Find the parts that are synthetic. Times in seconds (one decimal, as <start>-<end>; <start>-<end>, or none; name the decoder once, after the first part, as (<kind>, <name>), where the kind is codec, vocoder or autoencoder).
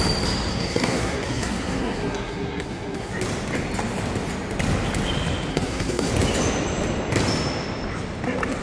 0.5-3.1 (codec, SNAC); 5.5-6.1